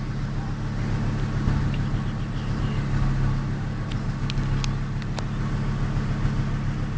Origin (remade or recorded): recorded